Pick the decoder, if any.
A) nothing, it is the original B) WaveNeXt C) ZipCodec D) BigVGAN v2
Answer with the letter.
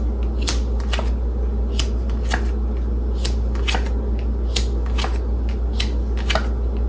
A